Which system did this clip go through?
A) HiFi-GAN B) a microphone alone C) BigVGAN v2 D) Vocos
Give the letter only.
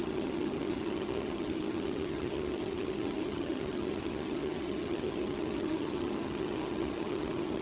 A